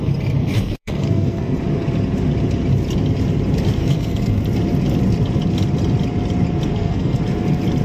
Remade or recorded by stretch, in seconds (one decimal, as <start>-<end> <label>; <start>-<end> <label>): 0.0-0.4 recorded; 0.4-1.6 remade; 1.6-3.8 recorded; 3.8-4.4 remade; 4.4-6.7 recorded; 6.7-7.2 remade; 7.2-7.8 recorded